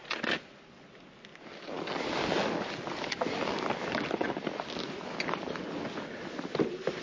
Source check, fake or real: real